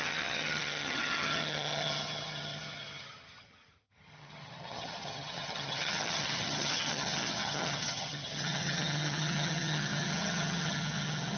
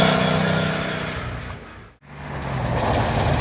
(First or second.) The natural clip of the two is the second